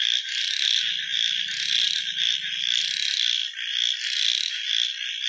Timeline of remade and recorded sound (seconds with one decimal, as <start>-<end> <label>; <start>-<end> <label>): 0.0-5.3 recorded